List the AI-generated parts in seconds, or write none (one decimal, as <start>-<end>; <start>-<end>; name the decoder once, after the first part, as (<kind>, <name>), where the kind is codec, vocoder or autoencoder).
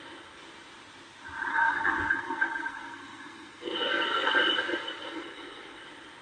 1.5-4.3 (codec, SNAC); 5.0-5.8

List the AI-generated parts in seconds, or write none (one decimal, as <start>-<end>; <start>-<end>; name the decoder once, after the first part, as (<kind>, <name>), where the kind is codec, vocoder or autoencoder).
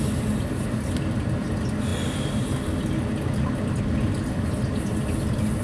none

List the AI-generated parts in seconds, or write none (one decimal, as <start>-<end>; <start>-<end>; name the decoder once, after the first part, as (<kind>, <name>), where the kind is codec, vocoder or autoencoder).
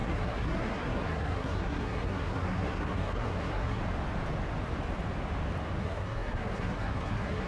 0.0-3.8 (codec, SNAC); 5.8-7.5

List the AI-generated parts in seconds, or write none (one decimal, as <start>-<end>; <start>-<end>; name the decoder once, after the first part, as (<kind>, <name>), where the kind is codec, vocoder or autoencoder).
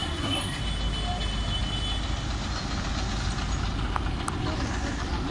0.0-0.6 (codec, SNAC)